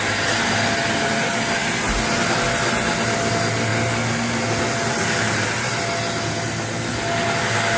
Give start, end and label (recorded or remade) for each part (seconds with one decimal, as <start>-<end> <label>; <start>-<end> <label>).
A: 0.0-7.8 recorded